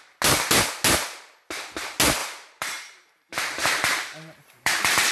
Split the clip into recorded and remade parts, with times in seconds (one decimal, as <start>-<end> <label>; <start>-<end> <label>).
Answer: 0.0-2.2 recorded; 2.2-5.1 remade